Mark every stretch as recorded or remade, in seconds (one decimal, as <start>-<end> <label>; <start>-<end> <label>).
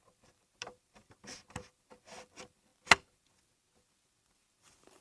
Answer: 0.0-5.0 recorded